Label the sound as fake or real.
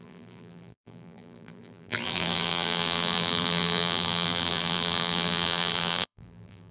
fake